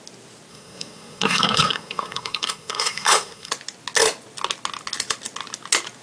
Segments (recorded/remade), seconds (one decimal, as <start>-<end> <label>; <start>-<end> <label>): 0.0-0.5 recorded; 0.5-3.5 remade; 3.5-6.0 recorded